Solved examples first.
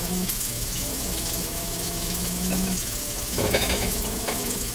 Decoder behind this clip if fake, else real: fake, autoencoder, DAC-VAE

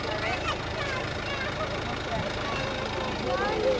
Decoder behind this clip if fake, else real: real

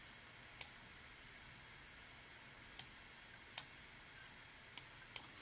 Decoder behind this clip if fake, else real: real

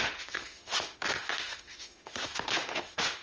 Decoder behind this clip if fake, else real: fake, autoencoder, DAC-VAE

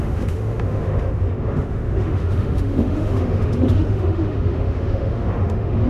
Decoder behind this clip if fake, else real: fake, autoencoder, DAC-VAE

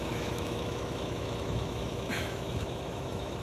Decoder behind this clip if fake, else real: fake, autoencoder, DAC-VAE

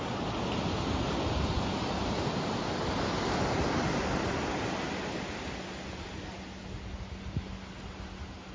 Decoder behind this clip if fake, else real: real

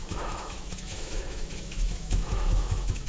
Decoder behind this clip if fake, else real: fake, autoencoder, DAC-VAE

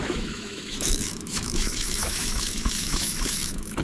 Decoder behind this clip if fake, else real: fake, autoencoder, DAC-VAE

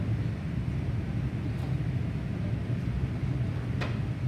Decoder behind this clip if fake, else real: real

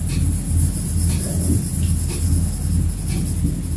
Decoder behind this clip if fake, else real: real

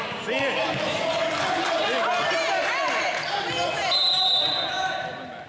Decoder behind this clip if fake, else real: real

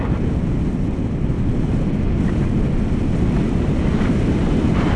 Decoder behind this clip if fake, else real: real